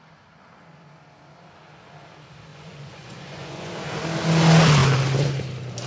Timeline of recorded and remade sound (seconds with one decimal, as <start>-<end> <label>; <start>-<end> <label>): 0.0-2.5 recorded; 2.5-3.7 remade; 3.7-5.9 recorded